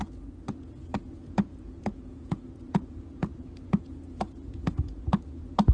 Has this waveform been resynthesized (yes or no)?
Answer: yes